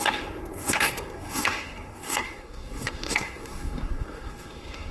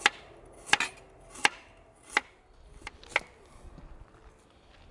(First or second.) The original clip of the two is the second